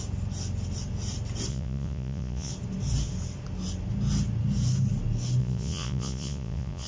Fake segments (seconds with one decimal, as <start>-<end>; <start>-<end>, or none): 1.5-2.5; 5.4-6.9